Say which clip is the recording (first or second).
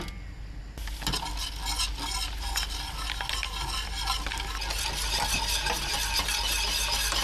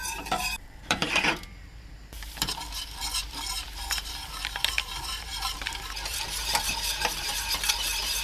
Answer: first